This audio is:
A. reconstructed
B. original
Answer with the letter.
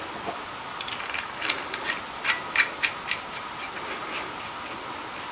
B